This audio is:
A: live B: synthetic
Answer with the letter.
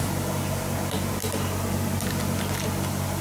A